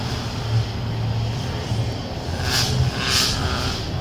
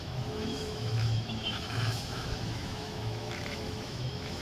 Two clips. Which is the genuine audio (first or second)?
first